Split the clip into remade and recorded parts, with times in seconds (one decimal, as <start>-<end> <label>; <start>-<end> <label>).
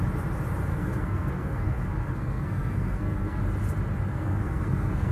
0.0-0.7 recorded; 0.7-3.4 remade; 3.4-4.1 recorded; 4.1-5.1 remade